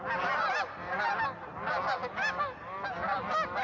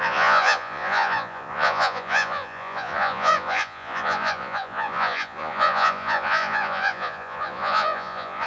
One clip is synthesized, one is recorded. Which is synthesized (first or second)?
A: second